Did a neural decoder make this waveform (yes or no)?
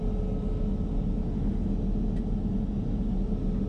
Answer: no